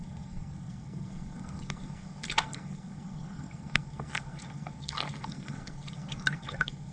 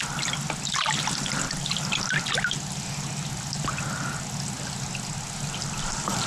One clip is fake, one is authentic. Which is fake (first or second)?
first